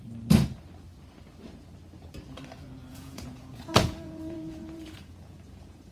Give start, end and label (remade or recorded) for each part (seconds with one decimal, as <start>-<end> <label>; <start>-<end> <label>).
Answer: 0.0-2.9 recorded; 2.9-5.9 remade